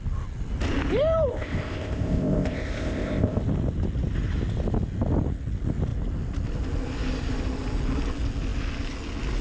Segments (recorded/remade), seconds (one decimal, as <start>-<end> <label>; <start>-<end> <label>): 0.0-1.3 recorded; 1.3-3.4 remade; 3.4-9.4 recorded